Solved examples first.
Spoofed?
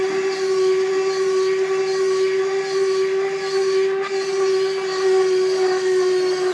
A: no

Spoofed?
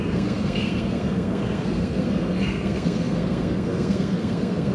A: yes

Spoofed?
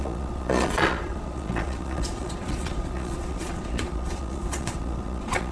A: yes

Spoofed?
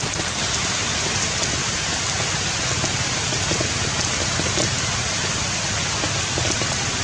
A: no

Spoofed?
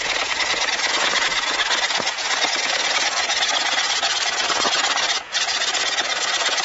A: yes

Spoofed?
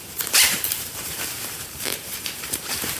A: yes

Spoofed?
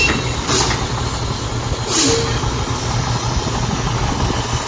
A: no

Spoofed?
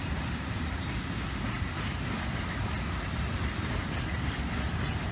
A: no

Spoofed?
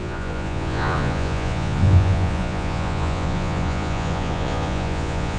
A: yes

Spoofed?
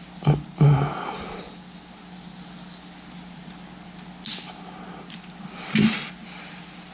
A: no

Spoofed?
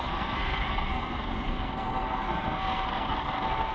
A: yes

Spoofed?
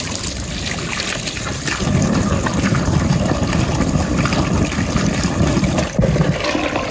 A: no